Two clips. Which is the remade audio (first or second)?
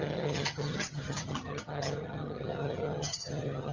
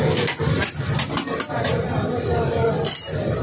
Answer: first